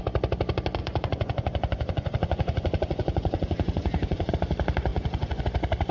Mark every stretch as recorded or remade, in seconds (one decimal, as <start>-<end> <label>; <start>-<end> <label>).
0.0-0.8 recorded; 0.8-4.3 remade; 4.3-4.9 recorded; 4.9-5.4 remade; 5.4-5.9 recorded

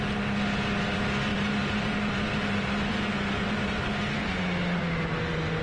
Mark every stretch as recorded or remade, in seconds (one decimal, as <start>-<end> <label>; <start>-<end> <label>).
0.0-1.3 recorded; 1.3-3.9 remade; 3.9-5.6 recorded

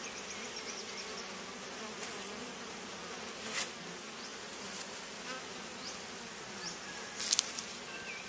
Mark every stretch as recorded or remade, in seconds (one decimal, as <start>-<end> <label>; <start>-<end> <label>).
0.0-2.4 recorded; 2.4-2.9 remade; 2.9-4.3 recorded; 4.3-5.0 remade; 5.0-8.3 recorded

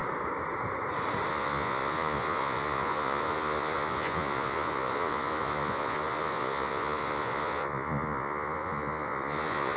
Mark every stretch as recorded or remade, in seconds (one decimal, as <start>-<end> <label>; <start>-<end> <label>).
0.0-1.3 recorded; 1.3-9.8 remade

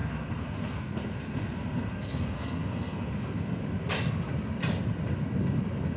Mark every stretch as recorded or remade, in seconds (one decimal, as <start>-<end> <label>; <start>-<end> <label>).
0.0-3.6 remade; 3.6-6.0 recorded

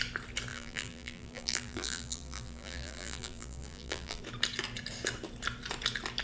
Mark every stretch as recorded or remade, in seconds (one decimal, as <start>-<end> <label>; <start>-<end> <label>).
0.0-0.5 recorded; 0.5-4.2 remade; 4.2-6.2 recorded

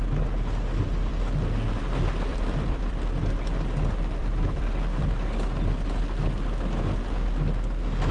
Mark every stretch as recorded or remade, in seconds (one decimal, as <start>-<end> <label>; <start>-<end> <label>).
0.0-2.3 recorded; 2.3-3.2 remade; 3.2-4.2 recorded; 4.2-5.1 remade; 5.1-8.1 recorded

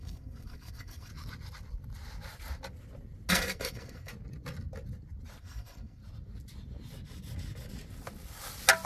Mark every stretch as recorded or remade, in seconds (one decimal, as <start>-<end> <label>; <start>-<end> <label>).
0.0-1.1 remade; 1.1-3.3 recorded; 3.3-4.1 remade; 4.1-5.4 recorded; 5.4-6.0 remade; 6.0-8.9 recorded